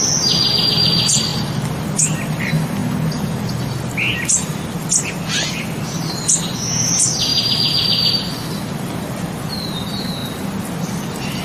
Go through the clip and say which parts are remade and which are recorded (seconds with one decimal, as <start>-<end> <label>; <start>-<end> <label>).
0.0-11.4 recorded